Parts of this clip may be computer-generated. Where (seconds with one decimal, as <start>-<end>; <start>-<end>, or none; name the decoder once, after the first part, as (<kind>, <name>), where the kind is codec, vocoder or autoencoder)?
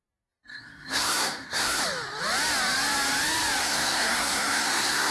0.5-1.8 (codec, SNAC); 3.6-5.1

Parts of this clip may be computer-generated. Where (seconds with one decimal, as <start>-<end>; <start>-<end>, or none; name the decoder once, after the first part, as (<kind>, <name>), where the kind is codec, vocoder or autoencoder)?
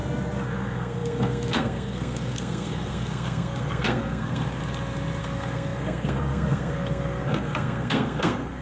0.5-4.6 (codec, SNAC); 5.2-8.6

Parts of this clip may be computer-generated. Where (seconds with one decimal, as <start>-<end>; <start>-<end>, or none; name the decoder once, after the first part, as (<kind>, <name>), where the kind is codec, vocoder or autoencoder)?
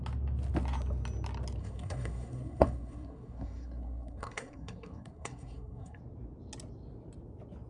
1.6-6.0 (codec, SNAC)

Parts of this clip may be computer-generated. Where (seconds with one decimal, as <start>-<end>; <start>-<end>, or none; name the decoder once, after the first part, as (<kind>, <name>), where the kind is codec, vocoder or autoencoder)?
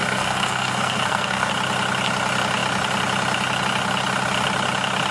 0.0-1.5 (codec, SNAC)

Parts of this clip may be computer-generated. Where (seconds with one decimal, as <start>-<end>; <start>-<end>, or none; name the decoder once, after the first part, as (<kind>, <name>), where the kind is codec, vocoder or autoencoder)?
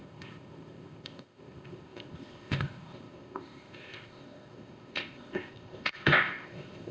0.0-6.9 (codec, ZipCodec)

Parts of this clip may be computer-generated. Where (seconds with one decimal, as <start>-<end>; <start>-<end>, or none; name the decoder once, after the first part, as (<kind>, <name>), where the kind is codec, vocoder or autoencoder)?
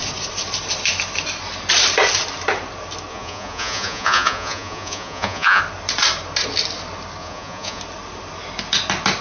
3.1-5.6 (vocoder, Vocos); 7.2-7.8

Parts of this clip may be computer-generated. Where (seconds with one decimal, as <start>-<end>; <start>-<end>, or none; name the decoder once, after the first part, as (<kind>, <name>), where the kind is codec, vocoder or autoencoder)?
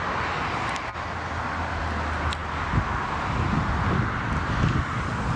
none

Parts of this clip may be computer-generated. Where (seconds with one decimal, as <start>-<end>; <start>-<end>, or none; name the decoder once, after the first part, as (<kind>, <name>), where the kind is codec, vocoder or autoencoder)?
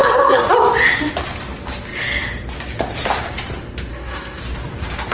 0.0-0.5 (codec, SNAC); 3.9-4.4